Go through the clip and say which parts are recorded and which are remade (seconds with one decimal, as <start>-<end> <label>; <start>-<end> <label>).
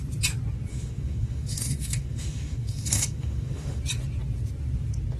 0.0-0.7 recorded; 0.7-3.8 remade; 3.8-5.2 recorded